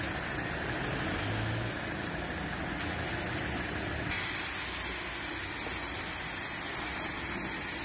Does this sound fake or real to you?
real